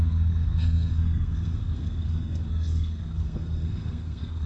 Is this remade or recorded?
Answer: remade